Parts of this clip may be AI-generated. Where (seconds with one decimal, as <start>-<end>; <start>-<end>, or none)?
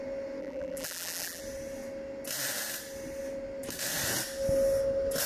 0.4-1.4